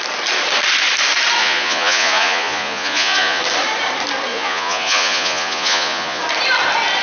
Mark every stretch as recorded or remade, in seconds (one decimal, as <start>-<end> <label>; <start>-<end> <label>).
0.0-1.4 recorded; 1.4-3.4 remade; 3.4-4.3 recorded; 4.3-6.2 remade; 6.2-7.0 recorded